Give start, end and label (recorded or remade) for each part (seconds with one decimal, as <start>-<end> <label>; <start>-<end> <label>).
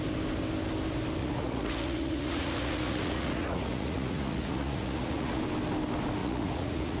0.0-1.2 recorded; 1.2-5.4 remade; 5.4-6.2 recorded; 6.2-7.0 remade